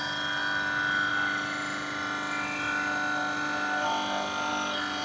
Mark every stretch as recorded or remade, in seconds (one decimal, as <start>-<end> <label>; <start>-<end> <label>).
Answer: 0.0-5.0 recorded